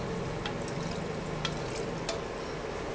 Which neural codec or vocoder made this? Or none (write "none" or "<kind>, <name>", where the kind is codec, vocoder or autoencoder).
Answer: none